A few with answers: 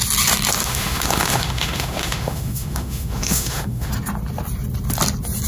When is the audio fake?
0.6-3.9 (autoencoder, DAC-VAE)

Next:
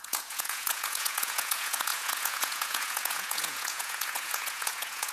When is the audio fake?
0.0-5.1 (vocoder, Vocos)